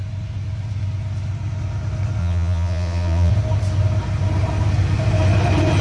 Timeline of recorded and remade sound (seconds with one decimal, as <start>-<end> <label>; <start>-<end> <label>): 0.0-2.2 recorded; 2.2-3.3 remade; 3.3-5.8 recorded